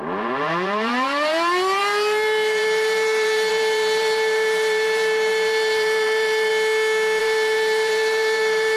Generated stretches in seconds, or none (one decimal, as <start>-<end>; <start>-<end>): 0.0-6.5; 7.2-8.8